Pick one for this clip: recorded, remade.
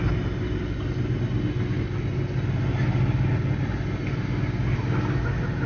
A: recorded